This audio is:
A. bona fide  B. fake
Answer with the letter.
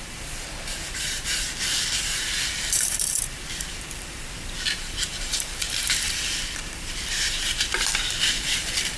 B